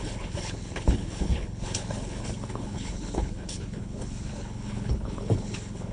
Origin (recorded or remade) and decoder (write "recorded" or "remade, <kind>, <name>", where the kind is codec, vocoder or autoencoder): remade, codec, HILCodec